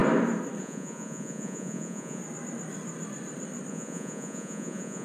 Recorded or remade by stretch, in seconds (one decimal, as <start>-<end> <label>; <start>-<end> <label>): 0.0-0.6 recorded; 0.6-2.2 remade; 2.2-3.7 recorded; 3.7-5.0 remade